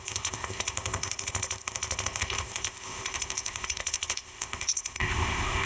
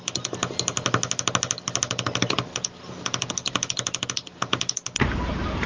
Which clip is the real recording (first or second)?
second